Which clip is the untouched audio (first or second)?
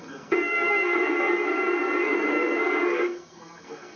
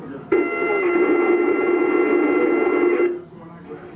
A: second